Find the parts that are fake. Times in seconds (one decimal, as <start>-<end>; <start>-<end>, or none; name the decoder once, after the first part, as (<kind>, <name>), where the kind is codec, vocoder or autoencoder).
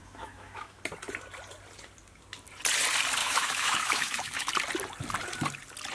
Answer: 0.0-0.8 (autoencoder, DAC-VAE); 3.2-4.5